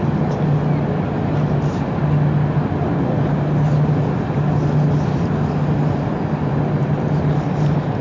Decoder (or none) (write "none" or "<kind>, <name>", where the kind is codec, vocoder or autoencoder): none